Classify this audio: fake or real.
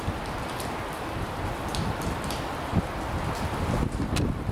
real